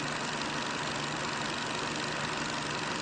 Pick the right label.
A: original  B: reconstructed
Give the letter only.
A